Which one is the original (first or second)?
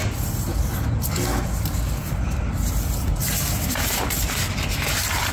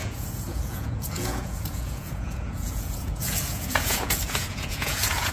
first